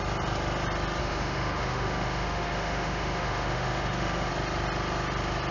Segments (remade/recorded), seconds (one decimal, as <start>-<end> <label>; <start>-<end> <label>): 0.0-1.0 recorded; 1.0-4.3 remade; 4.3-5.5 recorded